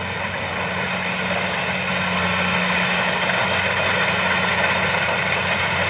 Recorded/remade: recorded